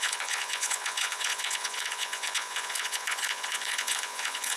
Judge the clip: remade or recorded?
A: remade